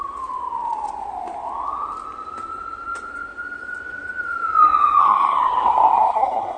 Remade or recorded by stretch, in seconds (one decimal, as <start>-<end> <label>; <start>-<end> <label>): 0.0-5.0 recorded; 5.0-6.6 remade

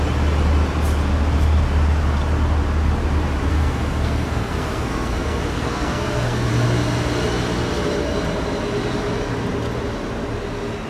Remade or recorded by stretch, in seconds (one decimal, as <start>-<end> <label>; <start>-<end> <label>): 0.0-3.5 recorded; 3.5-6.5 remade; 6.5-10.9 recorded

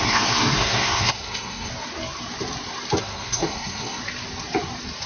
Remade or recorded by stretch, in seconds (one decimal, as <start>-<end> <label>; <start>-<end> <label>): 0.0-1.7 remade; 1.7-3.0 recorded; 3.0-4.0 remade; 4.0-5.1 recorded

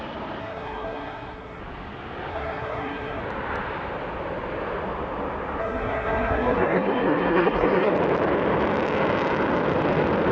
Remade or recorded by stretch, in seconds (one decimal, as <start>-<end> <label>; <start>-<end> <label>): 0.0-0.4 recorded; 0.4-1.6 remade; 1.6-2.3 recorded; 2.3-3.2 remade; 3.2-5.6 recorded; 5.6-7.9 remade; 7.9-10.3 recorded